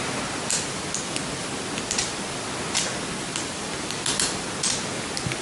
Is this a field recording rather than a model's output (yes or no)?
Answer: yes